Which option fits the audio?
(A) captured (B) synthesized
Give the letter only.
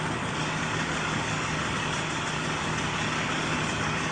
B